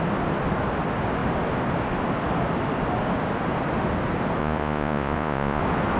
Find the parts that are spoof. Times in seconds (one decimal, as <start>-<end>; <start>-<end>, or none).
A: 4.4-5.6